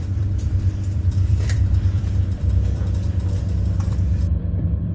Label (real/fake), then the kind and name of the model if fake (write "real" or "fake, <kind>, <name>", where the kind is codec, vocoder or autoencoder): fake, vocoder, BigVGAN v2